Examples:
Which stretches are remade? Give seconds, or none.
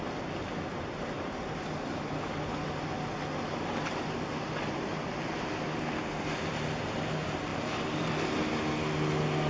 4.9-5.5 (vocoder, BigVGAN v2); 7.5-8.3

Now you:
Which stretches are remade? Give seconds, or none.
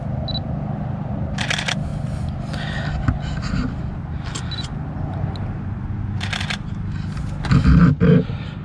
none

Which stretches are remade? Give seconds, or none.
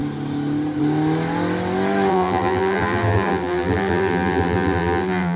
2.1-5.4 (vocoder, BigVGAN v2)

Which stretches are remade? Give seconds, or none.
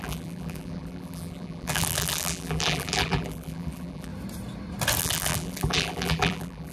0.0-4.1 (vocoder, BigVGAN v2); 5.0-6.7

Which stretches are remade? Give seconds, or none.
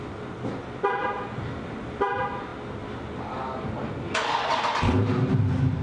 1.0-2.0 (vocoder, BigVGAN v2)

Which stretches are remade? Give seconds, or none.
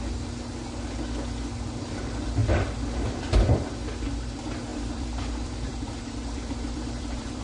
4.7-7.4 (vocoder, BigVGAN v2)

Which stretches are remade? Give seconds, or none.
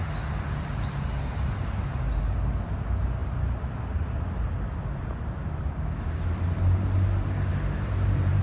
7.5-8.4 (vocoder, BigVGAN v2)